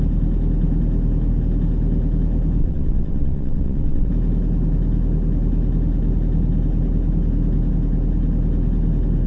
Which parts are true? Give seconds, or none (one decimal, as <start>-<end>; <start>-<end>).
0.0-2.6; 4.1-9.3